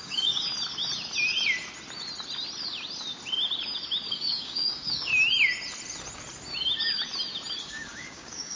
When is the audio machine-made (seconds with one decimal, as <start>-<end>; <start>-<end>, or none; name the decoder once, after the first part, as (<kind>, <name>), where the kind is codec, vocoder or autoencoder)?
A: 0.0-0.5 (codec, DAC); 4.1-5.1; 7.6-8.6